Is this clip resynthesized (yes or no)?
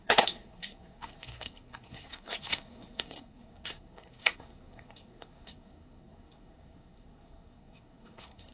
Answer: yes